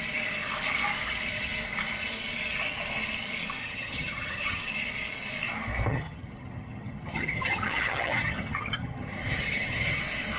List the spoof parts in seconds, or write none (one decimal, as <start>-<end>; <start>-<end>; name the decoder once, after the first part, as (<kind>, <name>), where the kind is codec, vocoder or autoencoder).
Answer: 3.6-4.6 (vocoder, HiFi-GAN); 5.9-10.0